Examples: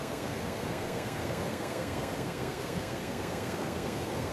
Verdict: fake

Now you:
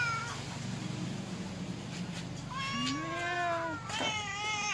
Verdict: real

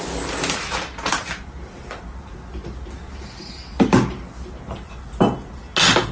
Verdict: real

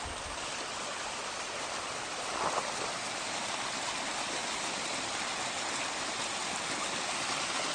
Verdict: real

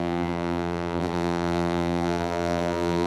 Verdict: fake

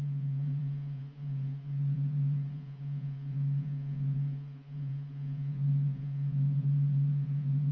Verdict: fake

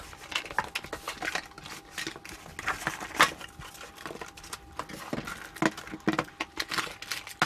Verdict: real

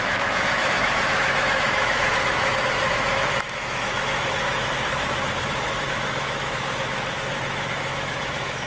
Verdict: fake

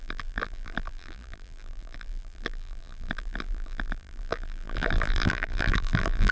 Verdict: fake